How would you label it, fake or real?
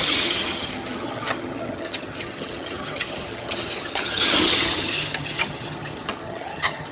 fake